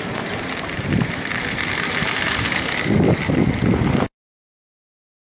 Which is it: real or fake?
fake